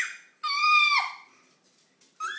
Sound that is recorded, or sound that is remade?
recorded